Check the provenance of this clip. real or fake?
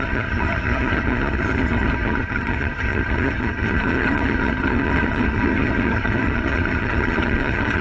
fake